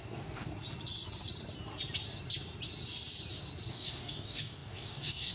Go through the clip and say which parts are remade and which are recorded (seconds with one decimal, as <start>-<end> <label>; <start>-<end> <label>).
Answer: 0.0-0.5 remade; 0.5-3.7 recorded; 3.7-5.3 remade